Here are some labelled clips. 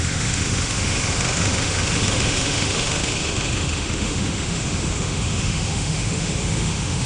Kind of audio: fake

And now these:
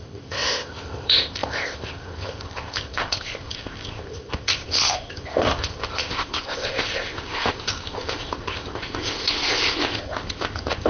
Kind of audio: fake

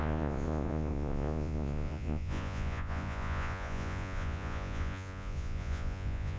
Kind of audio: fake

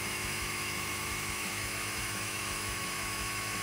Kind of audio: fake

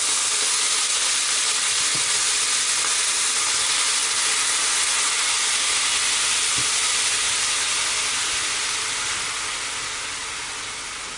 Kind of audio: real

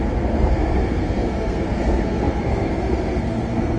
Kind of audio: fake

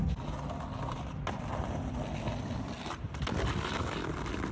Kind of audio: real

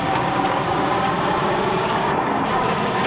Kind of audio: fake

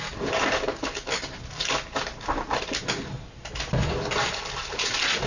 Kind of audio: real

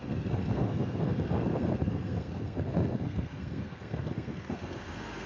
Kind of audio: fake